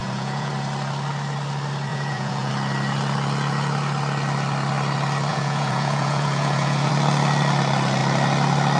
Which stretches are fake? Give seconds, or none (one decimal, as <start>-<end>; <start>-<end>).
0.0-0.5; 1.9-2.5; 5.3-6.9